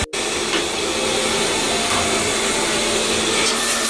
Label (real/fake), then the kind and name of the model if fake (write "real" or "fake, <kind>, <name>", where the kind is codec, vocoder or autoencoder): real